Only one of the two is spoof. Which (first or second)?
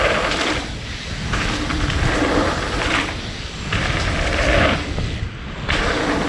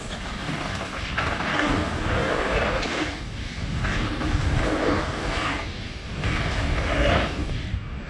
second